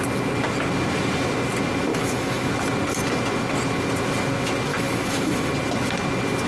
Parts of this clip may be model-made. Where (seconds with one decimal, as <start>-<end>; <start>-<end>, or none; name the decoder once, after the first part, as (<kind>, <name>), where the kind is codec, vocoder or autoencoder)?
1.9-2.5 (autoencoder, DAC-VAE); 4.7-5.5